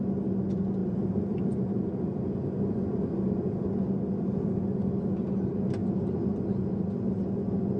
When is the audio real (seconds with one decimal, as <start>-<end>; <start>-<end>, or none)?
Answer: 0.0-0.8; 1.6-7.8